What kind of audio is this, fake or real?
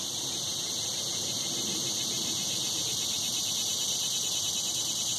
real